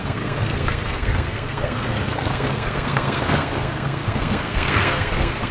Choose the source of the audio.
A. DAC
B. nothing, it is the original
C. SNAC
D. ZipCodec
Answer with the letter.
C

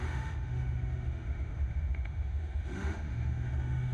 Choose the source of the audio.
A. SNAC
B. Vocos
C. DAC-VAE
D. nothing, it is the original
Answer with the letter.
C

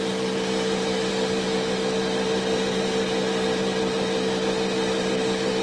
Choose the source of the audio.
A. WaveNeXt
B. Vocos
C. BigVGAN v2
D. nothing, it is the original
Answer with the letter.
D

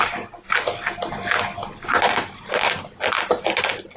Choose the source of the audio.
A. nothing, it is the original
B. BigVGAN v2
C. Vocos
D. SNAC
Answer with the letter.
A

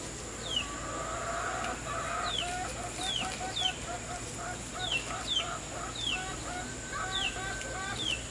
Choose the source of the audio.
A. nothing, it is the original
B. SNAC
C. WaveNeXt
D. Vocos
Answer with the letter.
A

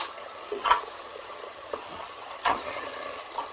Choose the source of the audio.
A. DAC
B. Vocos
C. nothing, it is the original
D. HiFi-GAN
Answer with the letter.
D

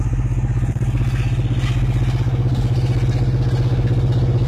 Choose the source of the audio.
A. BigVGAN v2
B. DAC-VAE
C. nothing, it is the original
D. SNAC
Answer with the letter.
C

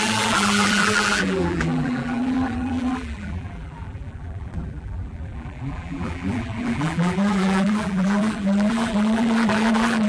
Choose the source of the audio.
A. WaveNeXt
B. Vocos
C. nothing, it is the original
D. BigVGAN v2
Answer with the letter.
D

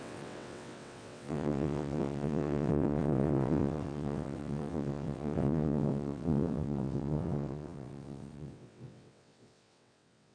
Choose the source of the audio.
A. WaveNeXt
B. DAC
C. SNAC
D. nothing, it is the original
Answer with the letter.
A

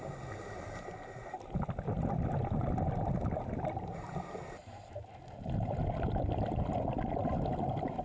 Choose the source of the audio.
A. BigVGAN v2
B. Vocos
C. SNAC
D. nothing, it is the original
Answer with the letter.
D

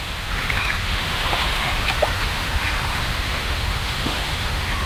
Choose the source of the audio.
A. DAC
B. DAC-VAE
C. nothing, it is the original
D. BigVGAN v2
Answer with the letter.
B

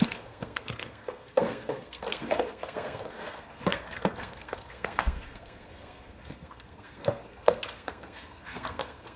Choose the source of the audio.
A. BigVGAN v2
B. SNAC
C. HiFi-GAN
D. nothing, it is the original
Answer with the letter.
B